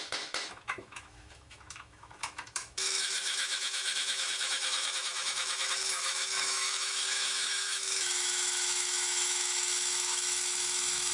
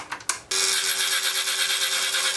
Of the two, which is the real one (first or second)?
second